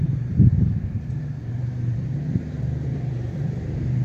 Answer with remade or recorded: remade